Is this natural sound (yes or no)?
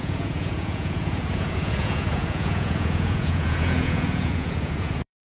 no